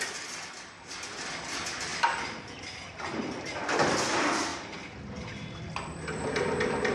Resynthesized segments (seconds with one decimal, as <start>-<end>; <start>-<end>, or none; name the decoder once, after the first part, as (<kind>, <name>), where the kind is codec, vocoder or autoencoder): none